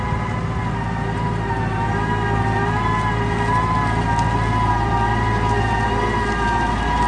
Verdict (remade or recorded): recorded